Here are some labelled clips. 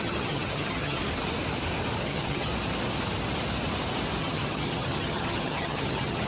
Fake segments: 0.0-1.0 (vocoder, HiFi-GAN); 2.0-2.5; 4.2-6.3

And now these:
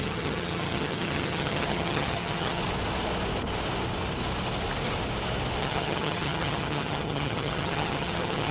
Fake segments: 0.0-2.6 (vocoder, HiFi-GAN); 5.6-8.5

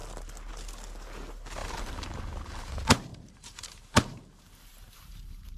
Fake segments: 1.6-2.7 (vocoder, BigVGAN v2); 3.1-5.6